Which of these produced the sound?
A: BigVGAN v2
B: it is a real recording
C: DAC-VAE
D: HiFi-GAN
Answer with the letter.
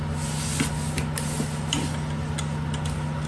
B